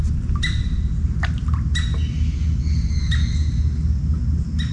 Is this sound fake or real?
real